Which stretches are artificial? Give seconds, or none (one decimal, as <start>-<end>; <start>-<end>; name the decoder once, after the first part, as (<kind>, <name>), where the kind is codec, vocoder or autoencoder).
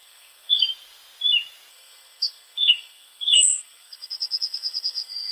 0.0-0.6 (codec, SNAC); 1.7-5.3